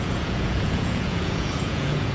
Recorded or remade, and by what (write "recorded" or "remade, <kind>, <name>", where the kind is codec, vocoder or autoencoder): remade, vocoder, Vocos